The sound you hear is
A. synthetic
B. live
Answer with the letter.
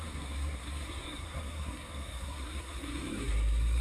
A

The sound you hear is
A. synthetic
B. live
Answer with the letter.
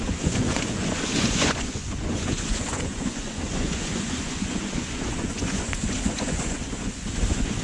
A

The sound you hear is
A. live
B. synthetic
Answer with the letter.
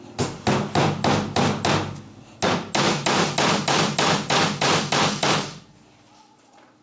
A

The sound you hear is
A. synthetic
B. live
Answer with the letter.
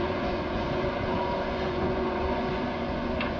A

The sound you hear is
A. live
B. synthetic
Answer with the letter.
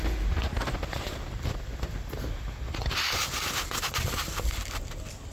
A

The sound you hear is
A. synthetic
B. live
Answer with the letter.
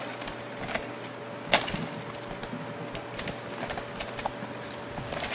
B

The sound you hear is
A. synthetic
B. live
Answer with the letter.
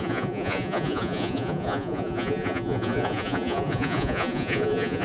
A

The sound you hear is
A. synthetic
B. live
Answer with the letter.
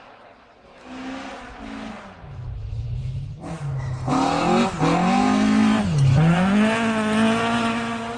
B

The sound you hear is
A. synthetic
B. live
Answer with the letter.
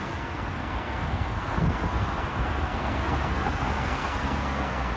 A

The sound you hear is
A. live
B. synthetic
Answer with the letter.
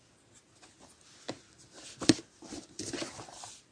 A